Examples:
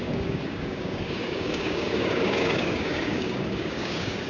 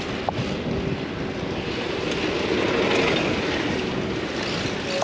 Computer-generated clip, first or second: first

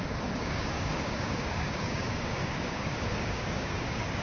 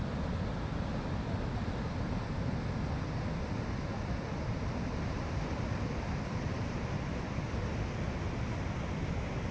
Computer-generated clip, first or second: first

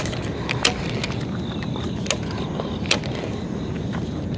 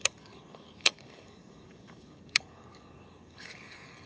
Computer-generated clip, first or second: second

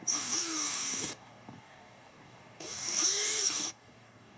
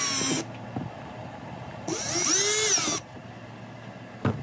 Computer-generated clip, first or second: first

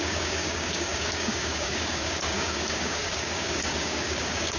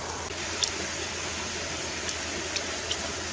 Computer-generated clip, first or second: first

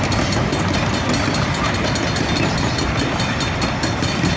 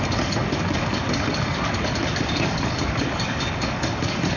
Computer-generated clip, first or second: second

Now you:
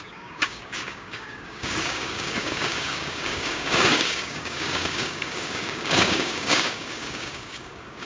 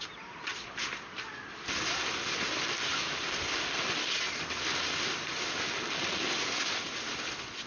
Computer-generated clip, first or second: first